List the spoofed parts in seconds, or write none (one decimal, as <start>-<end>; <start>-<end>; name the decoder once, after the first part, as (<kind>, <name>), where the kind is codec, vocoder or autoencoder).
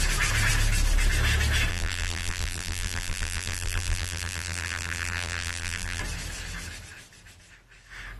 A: 1.7-6.0 (vocoder, BigVGAN v2)